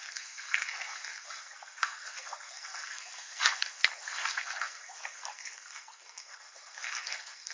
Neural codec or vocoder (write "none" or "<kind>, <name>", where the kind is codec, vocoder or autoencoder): codec, SNAC